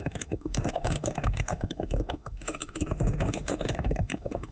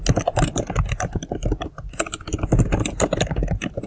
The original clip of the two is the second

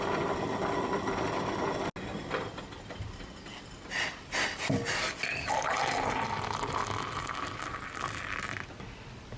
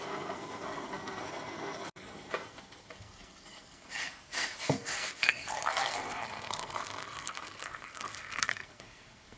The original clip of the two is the first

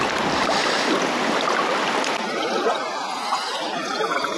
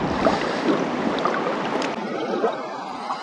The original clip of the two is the first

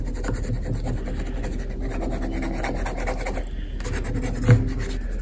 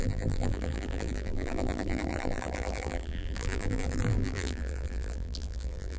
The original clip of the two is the first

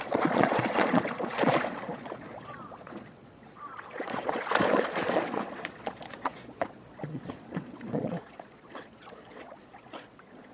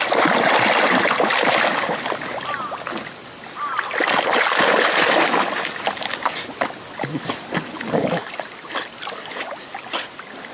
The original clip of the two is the second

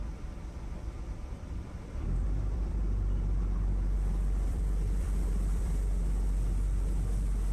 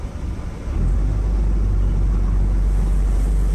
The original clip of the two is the second